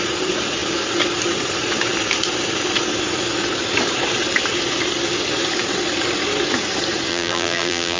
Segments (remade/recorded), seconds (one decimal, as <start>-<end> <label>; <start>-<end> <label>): 0.0-7.1 recorded; 7.1-8.0 remade